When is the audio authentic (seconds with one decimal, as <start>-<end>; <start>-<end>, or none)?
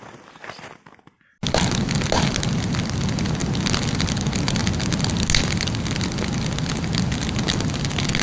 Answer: 0.0-8.2